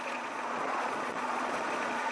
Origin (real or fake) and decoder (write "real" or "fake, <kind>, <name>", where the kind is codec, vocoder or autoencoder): fake, vocoder, Vocos